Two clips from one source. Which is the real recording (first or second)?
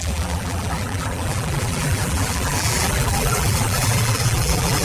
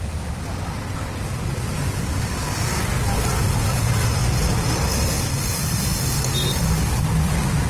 second